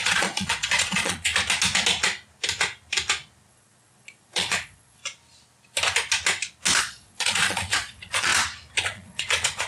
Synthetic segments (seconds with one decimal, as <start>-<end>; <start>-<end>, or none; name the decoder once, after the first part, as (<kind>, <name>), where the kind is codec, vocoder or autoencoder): 0.0-1.3 (vocoder, Vocos); 3.5-5.0; 6.8-8.3; 8.8-9.7